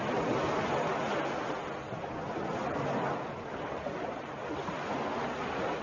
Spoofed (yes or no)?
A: no